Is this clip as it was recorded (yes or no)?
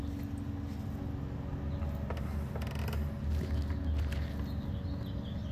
yes